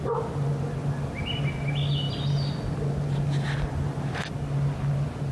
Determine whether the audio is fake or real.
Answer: real